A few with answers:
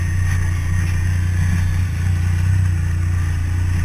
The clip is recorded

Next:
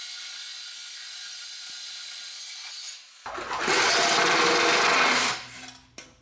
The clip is recorded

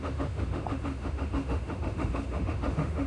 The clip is remade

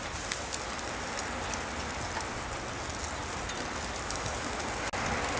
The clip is recorded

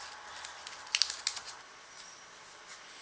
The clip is recorded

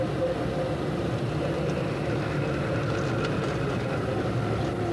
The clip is recorded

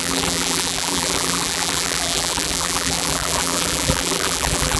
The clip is remade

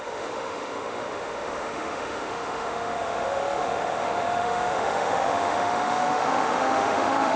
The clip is remade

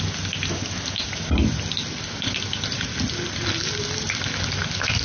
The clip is recorded